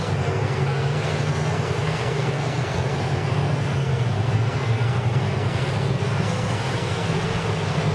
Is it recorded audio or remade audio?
remade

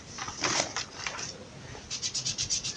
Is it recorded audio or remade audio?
recorded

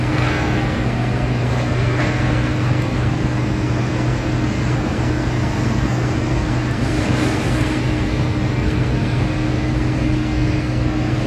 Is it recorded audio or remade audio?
remade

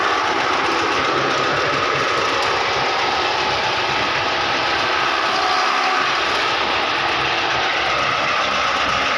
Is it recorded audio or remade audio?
recorded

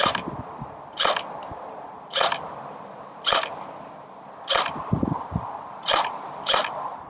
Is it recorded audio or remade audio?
recorded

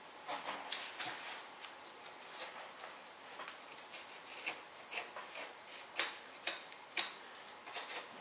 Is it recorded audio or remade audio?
recorded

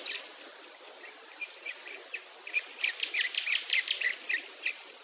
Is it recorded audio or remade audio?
recorded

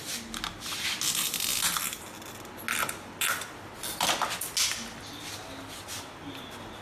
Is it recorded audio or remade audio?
recorded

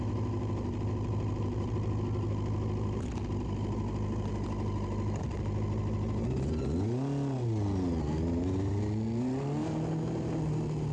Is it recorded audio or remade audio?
recorded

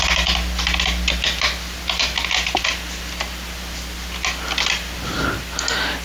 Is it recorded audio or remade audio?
recorded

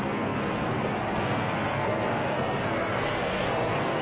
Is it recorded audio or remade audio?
remade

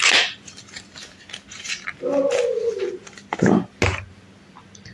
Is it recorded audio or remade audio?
recorded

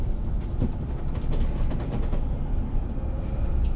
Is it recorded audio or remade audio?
recorded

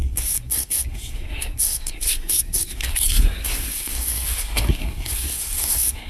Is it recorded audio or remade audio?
remade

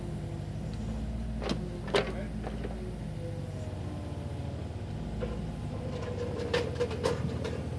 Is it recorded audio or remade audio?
recorded